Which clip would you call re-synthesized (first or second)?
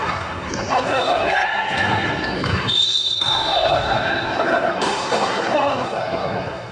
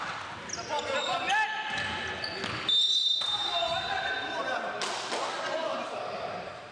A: first